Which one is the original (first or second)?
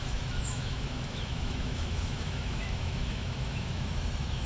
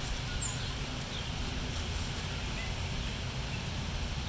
second